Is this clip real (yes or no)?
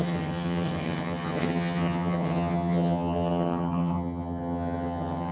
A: no